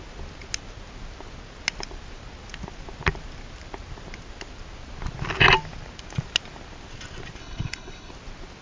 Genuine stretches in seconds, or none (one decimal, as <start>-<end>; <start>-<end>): 0.0-7.4; 8.1-8.6